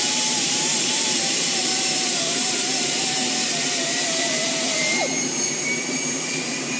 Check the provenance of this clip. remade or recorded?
remade